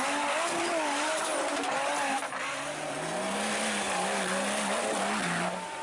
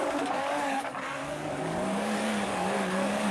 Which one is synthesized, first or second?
second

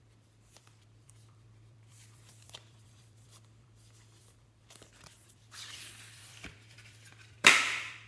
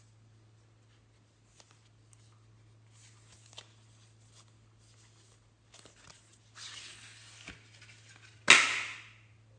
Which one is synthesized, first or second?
first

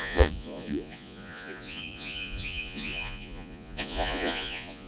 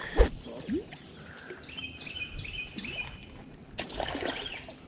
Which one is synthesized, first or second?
first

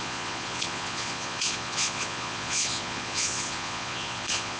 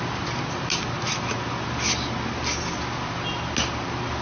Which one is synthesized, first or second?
first